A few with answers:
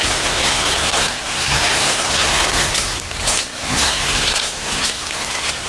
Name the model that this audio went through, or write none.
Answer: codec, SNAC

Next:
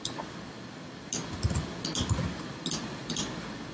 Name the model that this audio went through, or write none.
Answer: none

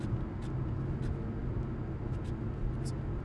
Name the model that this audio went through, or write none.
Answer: none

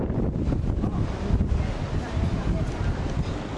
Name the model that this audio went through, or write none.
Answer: none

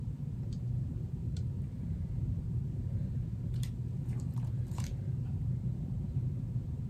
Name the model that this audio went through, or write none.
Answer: vocoder, BigVGAN v2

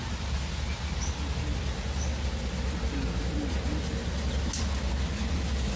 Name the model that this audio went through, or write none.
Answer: none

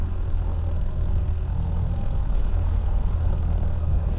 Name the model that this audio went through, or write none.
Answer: codec, SNAC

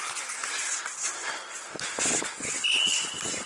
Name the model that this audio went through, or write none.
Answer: none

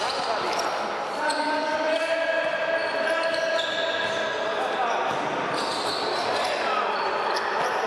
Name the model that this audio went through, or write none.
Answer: none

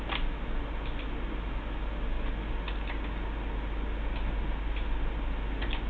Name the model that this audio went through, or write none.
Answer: none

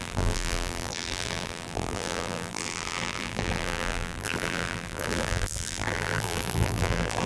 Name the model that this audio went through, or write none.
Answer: vocoder, BigVGAN v2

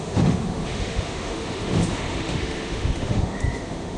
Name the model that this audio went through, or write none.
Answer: autoencoder, DAC-VAE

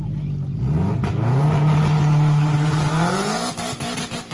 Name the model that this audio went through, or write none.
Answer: none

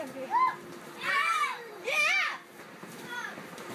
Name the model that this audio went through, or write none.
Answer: vocoder, BigVGAN v2